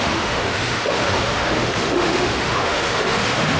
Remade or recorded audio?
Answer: remade